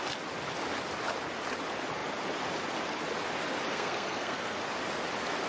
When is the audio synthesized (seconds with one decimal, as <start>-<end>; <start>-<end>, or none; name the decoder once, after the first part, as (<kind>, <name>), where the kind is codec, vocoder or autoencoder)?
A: 3.7-4.6 (codec, SNAC)